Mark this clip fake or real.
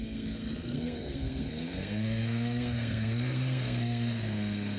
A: fake